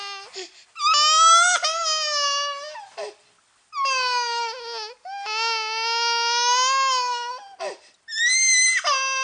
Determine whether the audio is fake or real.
real